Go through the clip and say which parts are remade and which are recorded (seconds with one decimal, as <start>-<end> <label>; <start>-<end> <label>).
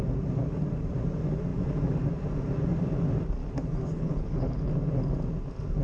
0.0-3.4 recorded; 3.4-4.7 remade; 4.7-5.8 recorded